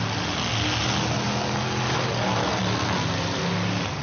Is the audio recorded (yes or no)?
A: yes